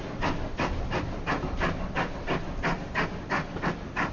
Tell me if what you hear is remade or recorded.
recorded